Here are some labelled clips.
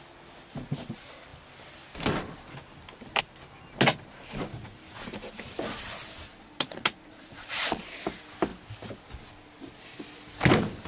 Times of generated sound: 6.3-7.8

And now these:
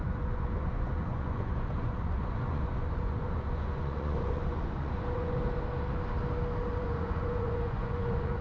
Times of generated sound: 0.0-5.4; 6.8-8.4

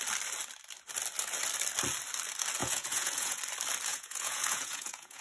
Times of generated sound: 2.6-3.4; 3.9-5.2

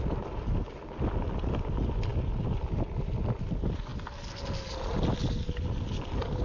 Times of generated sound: none

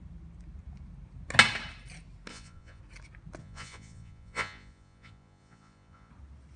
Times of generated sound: 2.3-2.8; 3.4-6.1

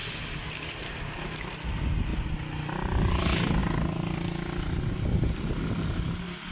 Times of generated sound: none